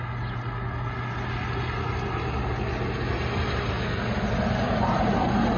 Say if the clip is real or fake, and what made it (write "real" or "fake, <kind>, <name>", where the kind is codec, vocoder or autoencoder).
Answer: real